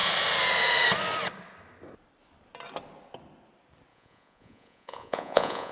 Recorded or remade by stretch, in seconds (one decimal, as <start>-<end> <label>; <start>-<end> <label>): 0.0-3.9 recorded; 3.9-5.7 remade